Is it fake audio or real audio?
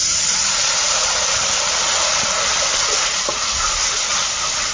real